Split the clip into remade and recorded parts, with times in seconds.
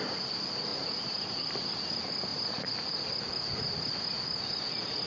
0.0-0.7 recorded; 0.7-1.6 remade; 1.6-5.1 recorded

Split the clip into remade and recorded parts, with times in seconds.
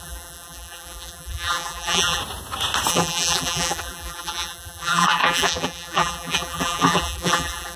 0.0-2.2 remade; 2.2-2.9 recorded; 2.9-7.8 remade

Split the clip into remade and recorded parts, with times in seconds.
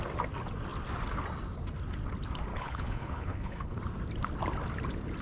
0.0-2.5 recorded; 2.5-3.8 remade; 3.8-5.2 recorded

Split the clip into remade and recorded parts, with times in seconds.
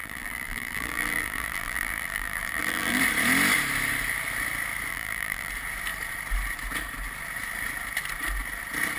0.0-3.0 remade; 3.0-4.9 recorded; 4.9-5.5 remade; 5.5-9.0 recorded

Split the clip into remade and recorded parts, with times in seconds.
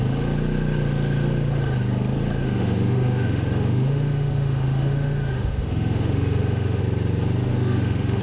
0.0-2.4 recorded; 2.4-6.8 remade; 6.8-7.5 recorded; 7.5-8.2 remade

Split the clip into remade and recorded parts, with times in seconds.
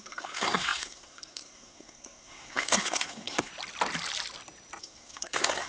0.0-3.5 remade; 3.5-4.8 recorded; 4.8-5.7 remade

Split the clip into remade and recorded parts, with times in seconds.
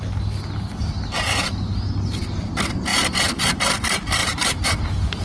0.0-2.9 recorded; 2.9-3.6 remade; 3.6-4.2 recorded; 4.2-5.2 remade